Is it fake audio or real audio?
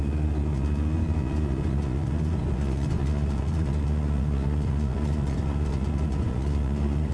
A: fake